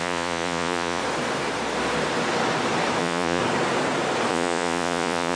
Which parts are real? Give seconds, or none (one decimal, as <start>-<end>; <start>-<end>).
1.0-3.0; 3.4-4.3